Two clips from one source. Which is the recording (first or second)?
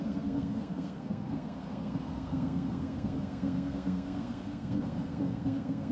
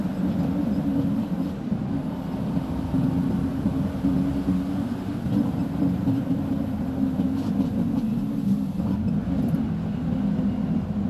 second